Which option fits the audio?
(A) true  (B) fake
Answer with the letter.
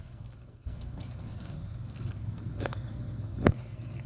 B